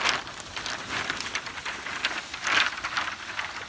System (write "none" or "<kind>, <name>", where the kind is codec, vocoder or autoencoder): none